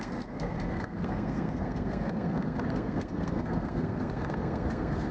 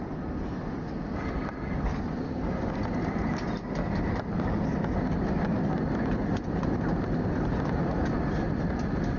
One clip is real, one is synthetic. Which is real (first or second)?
second